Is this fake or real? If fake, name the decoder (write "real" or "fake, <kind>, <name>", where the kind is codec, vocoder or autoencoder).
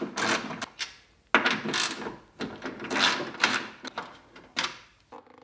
real